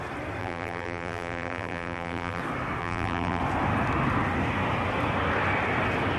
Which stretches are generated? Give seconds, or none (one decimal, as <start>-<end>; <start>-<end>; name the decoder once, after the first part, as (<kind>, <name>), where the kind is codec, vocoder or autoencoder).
0.4-2.4 (vocoder, BigVGAN v2); 2.8-3.4

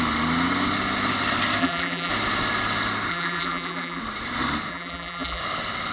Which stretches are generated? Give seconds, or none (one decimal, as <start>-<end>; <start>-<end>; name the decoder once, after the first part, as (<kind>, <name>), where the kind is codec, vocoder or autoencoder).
1.6-2.1 (vocoder, BigVGAN v2); 3.1-4.0; 4.7-5.4

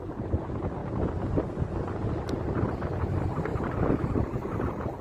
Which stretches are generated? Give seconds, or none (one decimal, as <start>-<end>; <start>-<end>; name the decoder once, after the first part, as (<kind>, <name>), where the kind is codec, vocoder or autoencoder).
none

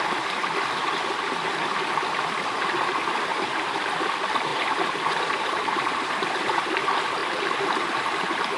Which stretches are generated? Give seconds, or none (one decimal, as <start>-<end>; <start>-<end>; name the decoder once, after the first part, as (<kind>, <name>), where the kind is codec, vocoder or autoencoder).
3.3-3.9 (vocoder, BigVGAN v2); 4.5-6.7

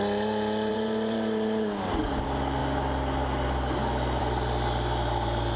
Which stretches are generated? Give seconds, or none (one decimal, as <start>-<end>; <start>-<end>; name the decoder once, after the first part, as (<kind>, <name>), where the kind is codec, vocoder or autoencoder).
0.7-1.9 (vocoder, BigVGAN v2)

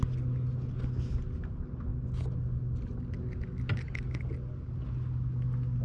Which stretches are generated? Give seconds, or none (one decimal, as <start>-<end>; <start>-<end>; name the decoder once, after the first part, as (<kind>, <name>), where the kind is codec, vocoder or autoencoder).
none